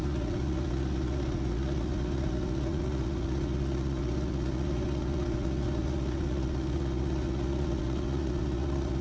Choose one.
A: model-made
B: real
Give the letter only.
A